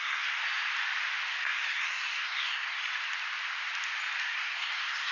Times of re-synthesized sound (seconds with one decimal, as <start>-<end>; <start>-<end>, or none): 0.0-0.4; 1.4-2.8; 4.2-5.1